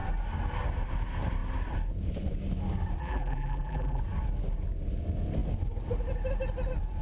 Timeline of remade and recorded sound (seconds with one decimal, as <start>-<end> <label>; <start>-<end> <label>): 0.0-3.0 recorded; 3.0-4.0 remade; 4.0-7.0 recorded

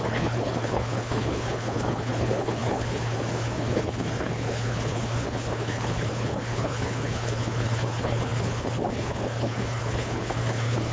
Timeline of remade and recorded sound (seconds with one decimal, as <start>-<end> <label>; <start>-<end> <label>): 0.0-10.9 remade

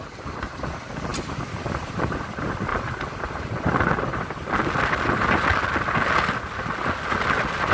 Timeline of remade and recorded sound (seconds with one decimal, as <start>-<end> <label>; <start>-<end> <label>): 0.0-7.7 recorded

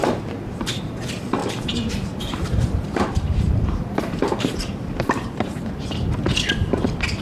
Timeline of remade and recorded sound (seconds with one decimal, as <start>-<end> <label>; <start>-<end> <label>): 0.0-0.8 remade; 0.8-1.4 recorded; 1.4-5.7 remade; 5.7-7.2 recorded

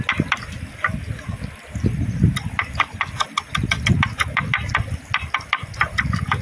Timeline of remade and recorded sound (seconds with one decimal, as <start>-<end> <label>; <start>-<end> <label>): 0.0-6.4 recorded

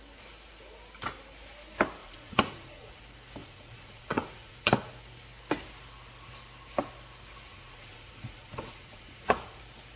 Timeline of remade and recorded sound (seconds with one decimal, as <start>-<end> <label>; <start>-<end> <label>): 0.0-2.0 recorded; 2.0-3.0 remade; 3.0-3.4 recorded; 3.4-4.7 remade; 4.7-7.5 recorded; 7.5-9.6 remade; 9.6-10.0 recorded